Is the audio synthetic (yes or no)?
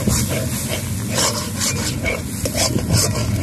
no